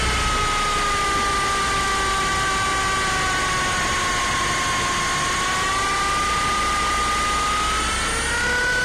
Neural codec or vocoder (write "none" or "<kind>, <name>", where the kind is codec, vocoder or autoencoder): none